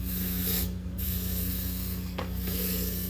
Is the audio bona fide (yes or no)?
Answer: no